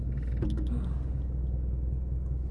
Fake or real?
real